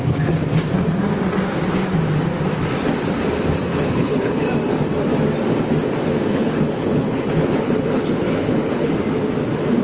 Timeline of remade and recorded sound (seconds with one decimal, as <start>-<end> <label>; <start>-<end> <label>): 0.0-3.7 recorded; 3.7-4.4 remade; 4.4-6.3 recorded; 6.3-8.9 remade; 8.9-9.8 recorded